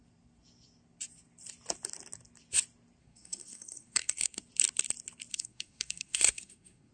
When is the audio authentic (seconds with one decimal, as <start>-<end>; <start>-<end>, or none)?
0.0-3.0; 4.4-5.3